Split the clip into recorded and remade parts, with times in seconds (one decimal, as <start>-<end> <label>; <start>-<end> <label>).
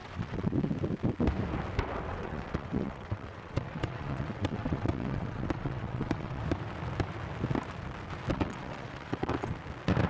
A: 0.0-0.7 remade; 0.7-2.1 recorded; 2.1-6.4 remade; 6.4-8.3 recorded; 8.3-9.5 remade; 9.5-10.1 recorded